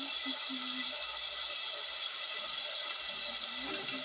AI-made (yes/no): no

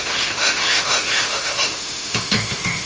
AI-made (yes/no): yes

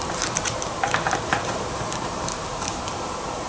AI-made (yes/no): no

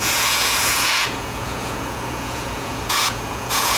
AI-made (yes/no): yes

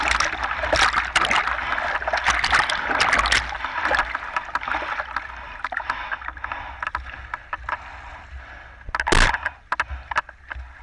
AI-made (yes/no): no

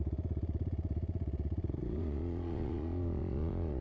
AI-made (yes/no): yes